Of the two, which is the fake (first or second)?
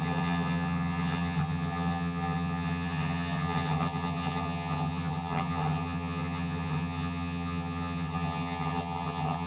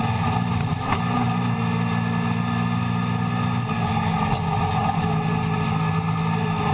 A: first